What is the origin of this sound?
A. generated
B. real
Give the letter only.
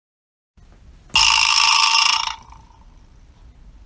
B